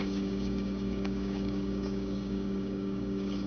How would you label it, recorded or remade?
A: remade